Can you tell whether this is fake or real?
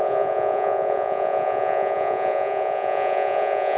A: fake